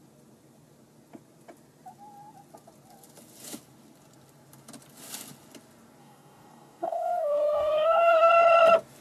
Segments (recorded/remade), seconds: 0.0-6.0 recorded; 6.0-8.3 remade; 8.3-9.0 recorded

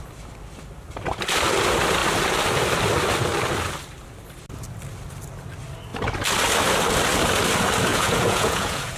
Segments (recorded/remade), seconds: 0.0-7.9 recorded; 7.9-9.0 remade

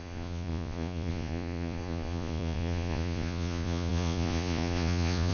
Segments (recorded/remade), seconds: 0.0-5.3 remade

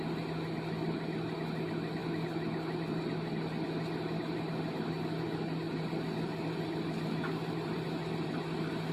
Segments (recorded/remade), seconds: 0.0-8.9 recorded